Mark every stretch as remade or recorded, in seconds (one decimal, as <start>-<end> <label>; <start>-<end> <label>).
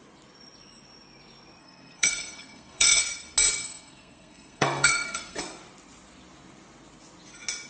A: 0.0-1.6 recorded; 1.6-3.0 remade; 3.0-3.6 recorded; 3.6-5.4 remade; 5.4-7.7 recorded